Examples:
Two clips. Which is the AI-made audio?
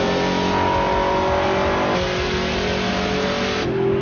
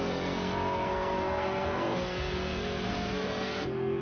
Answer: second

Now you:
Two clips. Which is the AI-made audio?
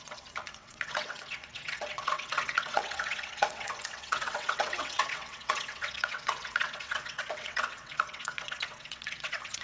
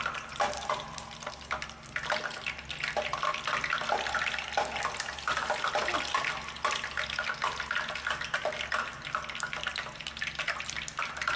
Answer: first